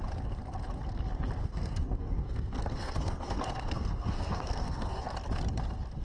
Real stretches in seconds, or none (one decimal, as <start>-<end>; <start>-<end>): 0.0-1.4; 5.0-6.0